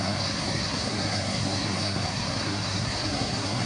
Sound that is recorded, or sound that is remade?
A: remade